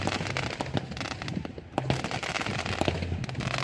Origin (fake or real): real